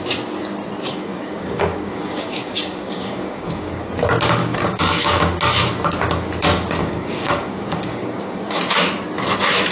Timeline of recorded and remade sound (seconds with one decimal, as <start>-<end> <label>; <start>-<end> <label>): 0.0-0.8 recorded; 0.8-3.9 remade; 3.9-4.4 recorded; 4.4-5.2 remade; 5.2-6.8 recorded; 6.8-8.6 remade; 8.6-9.7 recorded